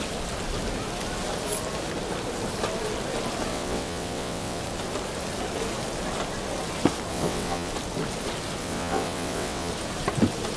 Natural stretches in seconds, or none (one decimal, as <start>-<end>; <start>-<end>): 0.0-3.5; 4.6-7.1; 7.7-8.6; 9.7-10.6